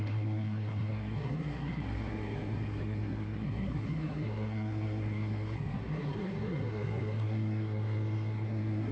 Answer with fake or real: fake